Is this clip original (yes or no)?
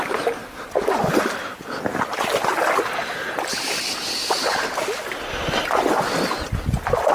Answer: yes